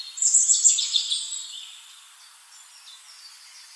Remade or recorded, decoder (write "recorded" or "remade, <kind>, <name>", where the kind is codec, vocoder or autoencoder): recorded